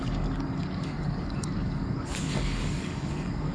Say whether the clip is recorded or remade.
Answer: remade